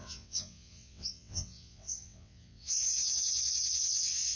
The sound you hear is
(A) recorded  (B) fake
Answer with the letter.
B